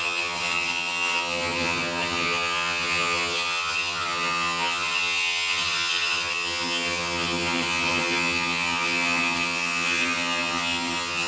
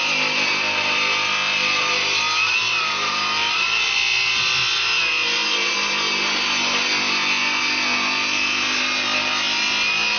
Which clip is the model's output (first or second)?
first